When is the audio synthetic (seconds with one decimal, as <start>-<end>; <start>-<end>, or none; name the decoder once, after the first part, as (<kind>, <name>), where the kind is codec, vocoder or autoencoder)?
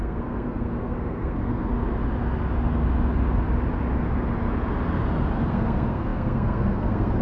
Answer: 0.0-1.7 (codec, SNAC); 5.5-7.2